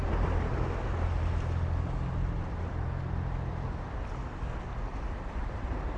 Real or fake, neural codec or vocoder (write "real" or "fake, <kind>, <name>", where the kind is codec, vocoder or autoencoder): real